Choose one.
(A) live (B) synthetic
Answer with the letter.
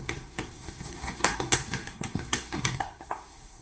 B